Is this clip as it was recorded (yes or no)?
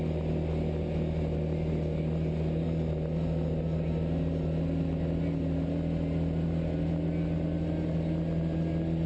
yes